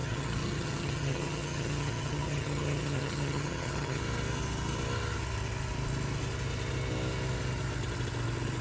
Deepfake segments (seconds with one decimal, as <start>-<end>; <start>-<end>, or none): 0.0-4.0